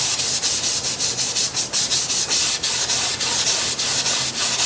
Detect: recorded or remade recorded